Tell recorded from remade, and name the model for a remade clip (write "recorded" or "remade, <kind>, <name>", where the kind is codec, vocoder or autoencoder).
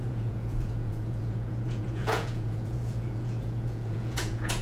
remade, vocoder, Vocos